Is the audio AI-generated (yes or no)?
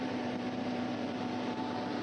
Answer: yes